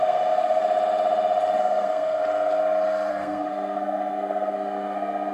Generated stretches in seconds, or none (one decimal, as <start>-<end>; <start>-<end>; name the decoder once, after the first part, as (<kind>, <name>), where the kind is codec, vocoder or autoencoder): 0.0-0.6 (codec, SNAC); 1.6-2.2; 3.1-5.3